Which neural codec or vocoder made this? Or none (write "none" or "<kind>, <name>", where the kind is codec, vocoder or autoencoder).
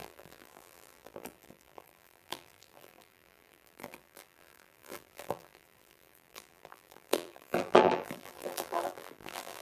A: vocoder, BigVGAN v2